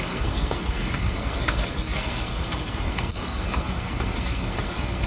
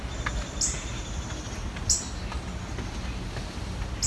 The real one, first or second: second